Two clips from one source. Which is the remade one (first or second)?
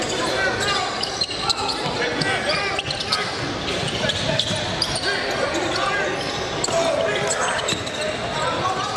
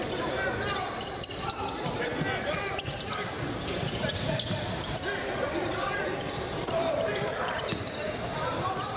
second